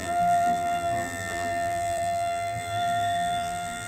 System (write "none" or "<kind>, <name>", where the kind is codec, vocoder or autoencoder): vocoder, BigVGAN v2